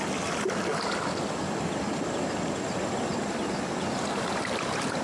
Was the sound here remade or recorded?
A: recorded